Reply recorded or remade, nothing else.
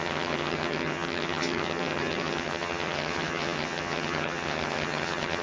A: remade